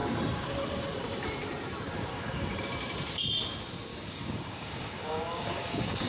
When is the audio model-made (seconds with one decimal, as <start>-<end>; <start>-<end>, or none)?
2.1-2.6; 3.9-6.1